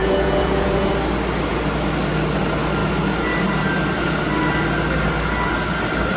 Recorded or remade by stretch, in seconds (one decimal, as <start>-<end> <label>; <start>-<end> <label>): 0.0-0.9 remade; 0.9-6.2 recorded